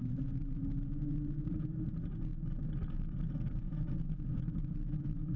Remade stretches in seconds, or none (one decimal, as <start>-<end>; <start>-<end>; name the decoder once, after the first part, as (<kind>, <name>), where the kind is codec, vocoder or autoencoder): 0.0-2.3 (vocoder, Vocos); 3.5-5.4